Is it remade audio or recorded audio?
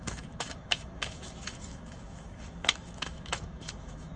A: remade